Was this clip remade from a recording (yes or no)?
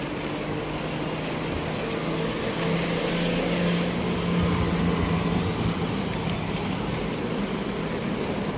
no